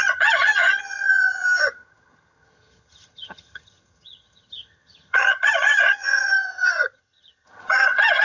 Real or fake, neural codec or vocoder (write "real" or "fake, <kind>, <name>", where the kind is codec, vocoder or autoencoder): fake, vocoder, HiFi-GAN